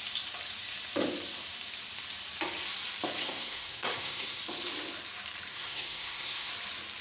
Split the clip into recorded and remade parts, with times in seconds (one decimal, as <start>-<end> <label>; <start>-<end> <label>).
0.0-3.2 recorded; 3.2-4.4 remade; 4.4-5.5 recorded; 5.5-6.5 remade; 6.5-7.0 recorded